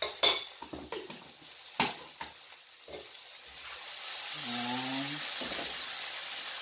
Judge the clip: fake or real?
real